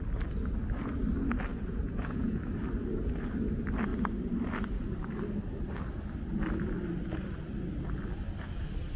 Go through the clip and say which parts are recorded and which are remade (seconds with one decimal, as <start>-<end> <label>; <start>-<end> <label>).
0.0-1.5 recorded; 1.5-2.4 remade; 2.4-9.0 recorded